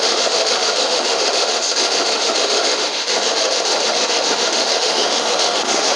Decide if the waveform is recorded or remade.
remade